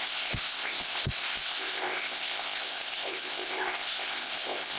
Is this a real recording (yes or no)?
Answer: no